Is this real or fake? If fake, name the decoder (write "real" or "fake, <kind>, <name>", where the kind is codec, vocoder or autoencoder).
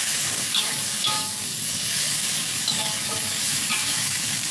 fake, codec, DAC